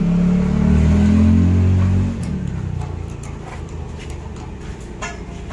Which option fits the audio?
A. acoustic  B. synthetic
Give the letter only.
A